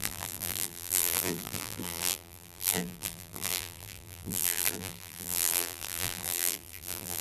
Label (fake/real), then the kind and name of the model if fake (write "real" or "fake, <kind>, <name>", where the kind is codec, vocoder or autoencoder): fake, vocoder, BigVGAN v2